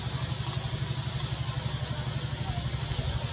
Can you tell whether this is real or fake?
real